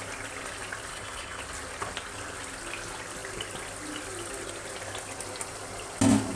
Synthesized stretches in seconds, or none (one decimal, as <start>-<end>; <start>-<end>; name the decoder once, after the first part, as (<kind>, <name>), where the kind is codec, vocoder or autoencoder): 0.9-1.4 (codec, HILCodec)